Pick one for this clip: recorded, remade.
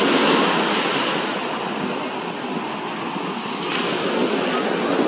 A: recorded